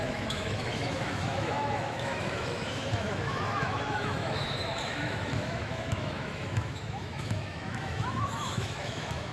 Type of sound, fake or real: fake